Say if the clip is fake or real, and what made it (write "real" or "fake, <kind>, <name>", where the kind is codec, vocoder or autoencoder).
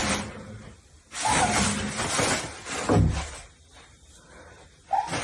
real